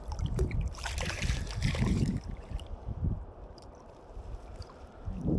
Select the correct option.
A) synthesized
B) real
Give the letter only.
A